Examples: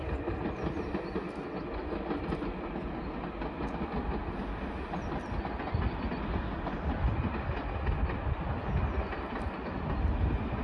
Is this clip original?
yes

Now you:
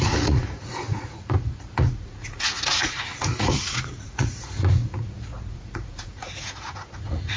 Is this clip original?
no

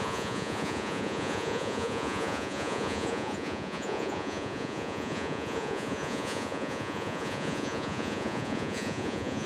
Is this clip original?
no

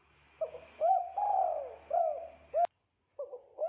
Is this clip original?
yes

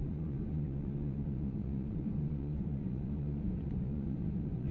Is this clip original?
no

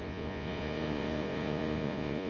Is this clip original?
no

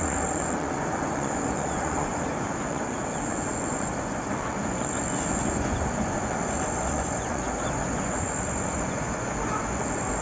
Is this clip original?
no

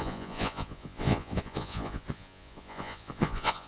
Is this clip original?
no